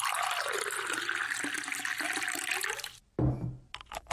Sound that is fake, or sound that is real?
real